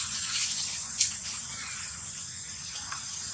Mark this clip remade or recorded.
remade